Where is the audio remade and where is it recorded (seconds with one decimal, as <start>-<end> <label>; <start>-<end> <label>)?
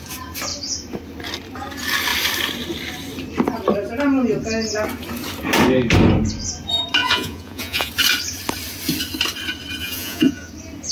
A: 0.0-7.0 recorded; 7.0-7.9 remade; 7.9-9.8 recorded; 9.8-10.5 remade; 10.5-10.9 recorded